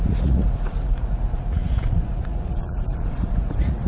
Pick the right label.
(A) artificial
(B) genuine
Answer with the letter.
A